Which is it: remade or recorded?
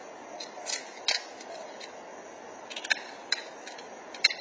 recorded